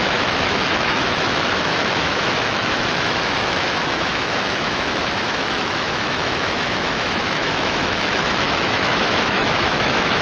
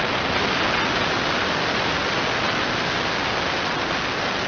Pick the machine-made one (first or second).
first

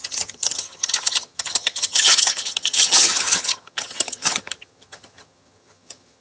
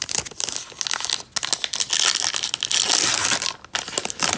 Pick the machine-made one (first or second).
first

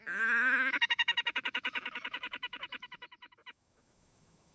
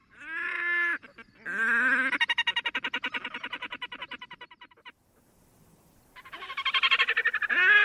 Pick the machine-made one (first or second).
first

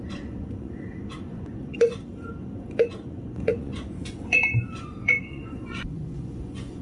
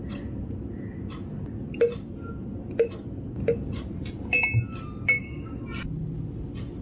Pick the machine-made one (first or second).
first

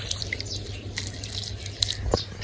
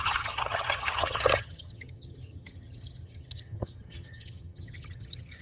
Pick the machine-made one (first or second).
second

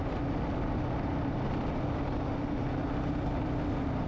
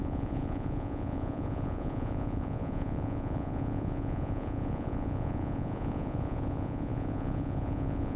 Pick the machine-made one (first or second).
second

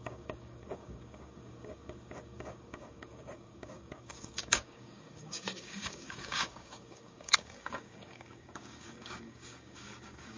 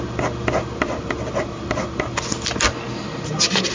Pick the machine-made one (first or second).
first